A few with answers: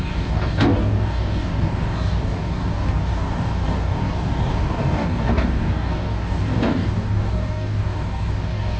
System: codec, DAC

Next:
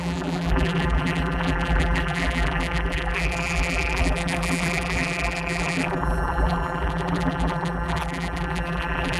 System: vocoder, BigVGAN v2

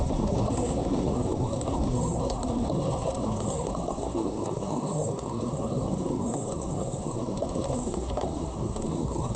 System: codec, SNAC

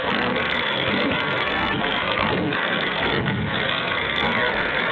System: codec, SNAC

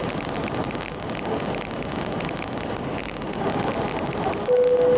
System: none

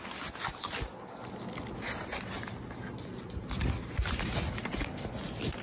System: none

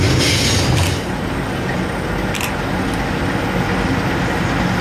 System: none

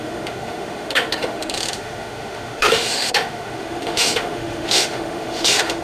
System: autoencoder, DAC-VAE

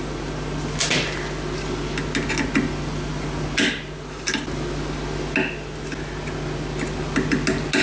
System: none